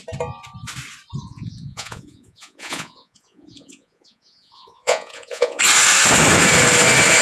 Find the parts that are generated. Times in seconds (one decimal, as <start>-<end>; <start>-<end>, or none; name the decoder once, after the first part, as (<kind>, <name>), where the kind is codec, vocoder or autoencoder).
1.3-5.6 (vocoder, Vocos)